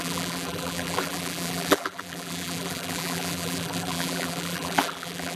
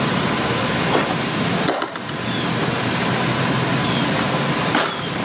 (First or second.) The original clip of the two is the second